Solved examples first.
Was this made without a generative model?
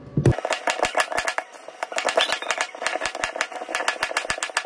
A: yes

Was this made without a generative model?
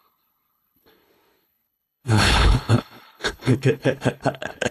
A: no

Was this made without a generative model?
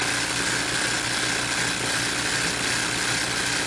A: yes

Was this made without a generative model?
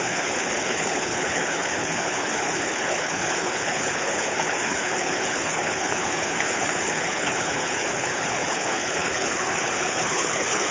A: no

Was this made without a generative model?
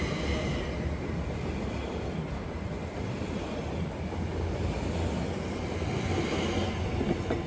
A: yes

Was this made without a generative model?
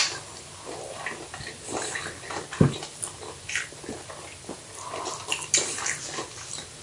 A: yes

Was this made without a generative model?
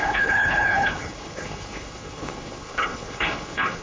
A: no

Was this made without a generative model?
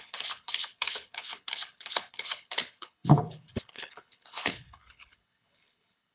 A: no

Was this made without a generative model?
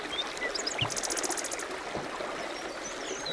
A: yes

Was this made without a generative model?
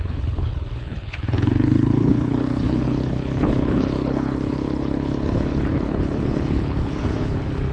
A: no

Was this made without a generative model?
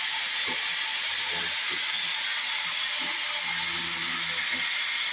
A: yes